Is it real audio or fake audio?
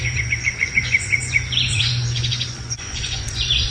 fake